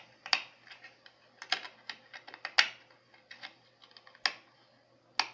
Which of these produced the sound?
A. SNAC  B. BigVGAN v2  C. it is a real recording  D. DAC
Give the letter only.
C